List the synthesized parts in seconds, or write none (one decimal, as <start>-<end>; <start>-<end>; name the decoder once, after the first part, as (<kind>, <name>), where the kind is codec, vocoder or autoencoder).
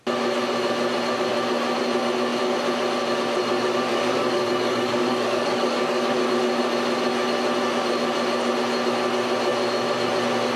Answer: 3.9-6.2 (codec, DAC)